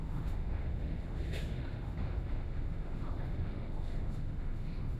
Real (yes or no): no